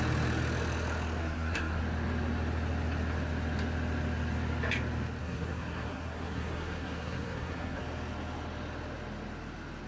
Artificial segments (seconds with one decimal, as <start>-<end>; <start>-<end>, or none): 1.2-1.8; 5.2-7.8